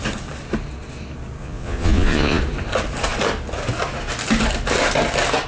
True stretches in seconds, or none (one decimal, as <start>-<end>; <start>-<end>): 0.0-1.4; 2.4-5.5